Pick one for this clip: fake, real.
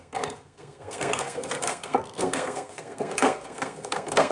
fake